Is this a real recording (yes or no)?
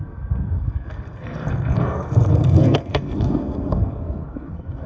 no